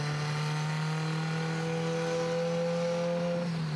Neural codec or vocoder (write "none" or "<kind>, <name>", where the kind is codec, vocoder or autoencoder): none